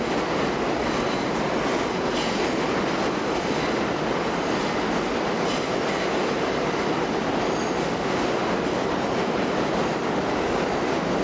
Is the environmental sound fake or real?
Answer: real